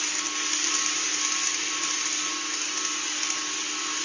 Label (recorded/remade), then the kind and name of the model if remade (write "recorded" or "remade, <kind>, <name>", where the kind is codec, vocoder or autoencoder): recorded